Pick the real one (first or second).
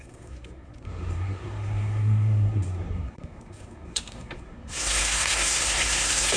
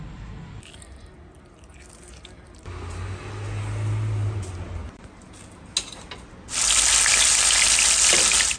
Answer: second